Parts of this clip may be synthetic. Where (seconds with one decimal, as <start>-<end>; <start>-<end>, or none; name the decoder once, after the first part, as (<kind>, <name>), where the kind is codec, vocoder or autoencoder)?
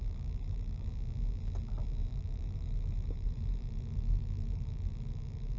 0.0-0.9 (autoencoder, DAC-VAE); 2.1-5.6